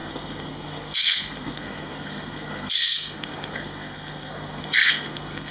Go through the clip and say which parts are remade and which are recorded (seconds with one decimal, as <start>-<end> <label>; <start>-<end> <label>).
0.0-5.5 remade

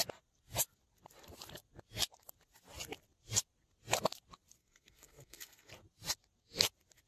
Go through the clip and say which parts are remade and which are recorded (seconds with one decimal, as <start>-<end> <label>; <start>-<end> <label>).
0.0-4.6 recorded; 4.6-5.7 remade; 5.7-7.1 recorded